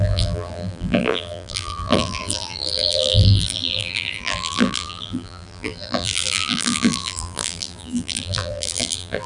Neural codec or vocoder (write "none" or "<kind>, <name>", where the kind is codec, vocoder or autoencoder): vocoder, BigVGAN v2